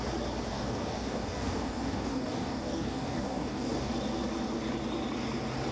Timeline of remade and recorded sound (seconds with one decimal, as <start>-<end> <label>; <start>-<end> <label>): 0.0-0.5 recorded; 0.5-3.9 remade; 3.9-5.7 recorded